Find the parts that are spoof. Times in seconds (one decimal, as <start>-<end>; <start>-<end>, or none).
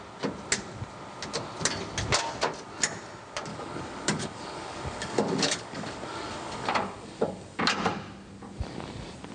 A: 3.5-7.6